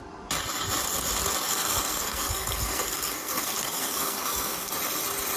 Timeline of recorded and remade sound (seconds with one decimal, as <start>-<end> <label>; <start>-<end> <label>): 0.0-1.5 recorded; 1.5-4.7 remade; 4.7-5.4 recorded